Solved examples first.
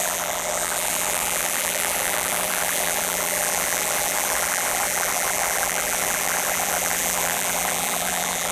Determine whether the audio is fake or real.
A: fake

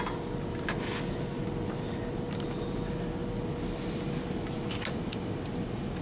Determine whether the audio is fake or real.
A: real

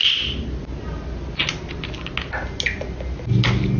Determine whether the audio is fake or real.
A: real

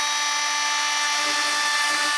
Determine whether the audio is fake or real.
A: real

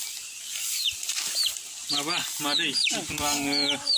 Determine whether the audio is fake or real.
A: fake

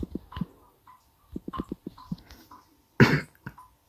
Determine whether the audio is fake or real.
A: real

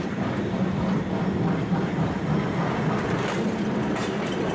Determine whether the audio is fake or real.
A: fake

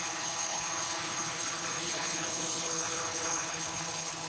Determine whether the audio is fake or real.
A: fake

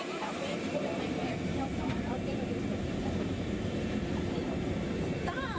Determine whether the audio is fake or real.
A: fake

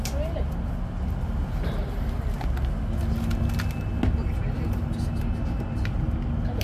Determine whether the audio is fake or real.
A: real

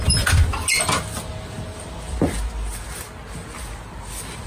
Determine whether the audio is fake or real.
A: real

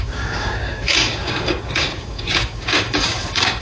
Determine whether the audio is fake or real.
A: fake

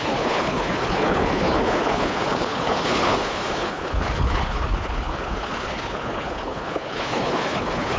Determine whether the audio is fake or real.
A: fake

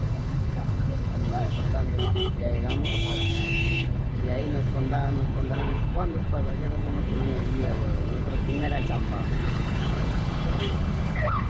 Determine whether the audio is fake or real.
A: fake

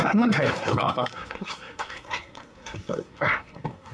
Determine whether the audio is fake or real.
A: fake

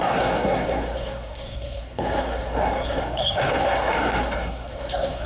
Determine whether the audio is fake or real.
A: fake